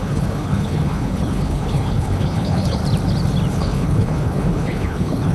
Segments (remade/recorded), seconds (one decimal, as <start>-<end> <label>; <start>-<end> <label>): 0.0-2.8 remade; 2.8-3.5 recorded; 3.5-5.3 remade